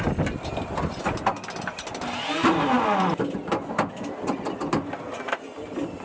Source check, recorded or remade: recorded